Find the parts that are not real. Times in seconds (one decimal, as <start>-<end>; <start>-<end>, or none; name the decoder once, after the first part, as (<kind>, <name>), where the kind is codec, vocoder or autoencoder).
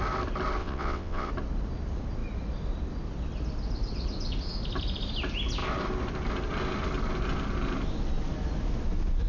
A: 0.6-1.3 (vocoder, WaveNeXt)